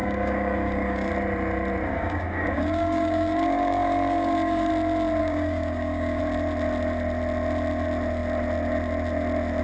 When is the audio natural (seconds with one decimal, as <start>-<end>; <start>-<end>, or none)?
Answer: 1.1-1.9; 4.7-5.2; 6.2-9.6